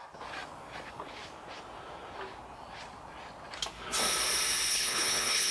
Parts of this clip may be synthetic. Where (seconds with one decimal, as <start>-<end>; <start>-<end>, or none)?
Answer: 4.7-5.5